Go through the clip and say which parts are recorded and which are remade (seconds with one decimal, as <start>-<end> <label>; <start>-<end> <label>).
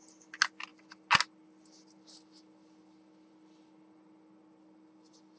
0.0-5.4 recorded